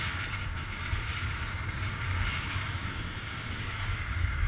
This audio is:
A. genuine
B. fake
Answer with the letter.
B